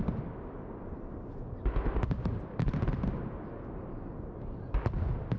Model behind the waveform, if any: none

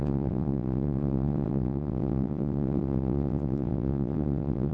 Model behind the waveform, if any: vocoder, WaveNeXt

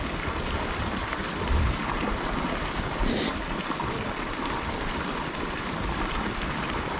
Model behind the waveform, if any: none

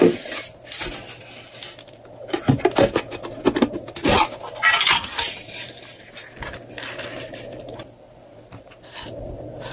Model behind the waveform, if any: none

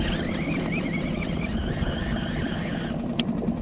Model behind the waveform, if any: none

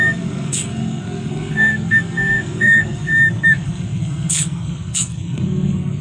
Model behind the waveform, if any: codec, SNAC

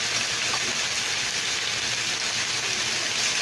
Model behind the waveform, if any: none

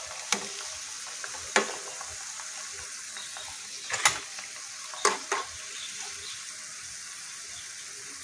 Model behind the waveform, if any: none